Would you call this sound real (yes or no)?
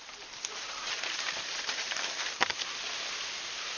no